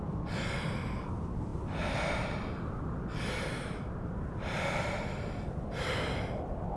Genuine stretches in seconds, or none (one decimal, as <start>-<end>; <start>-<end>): 0.0-6.8